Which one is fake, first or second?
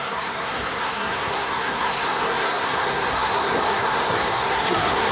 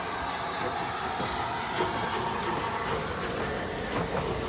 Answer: first